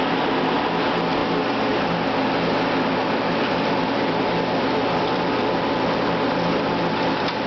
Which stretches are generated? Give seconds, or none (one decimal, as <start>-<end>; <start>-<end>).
3.0-7.5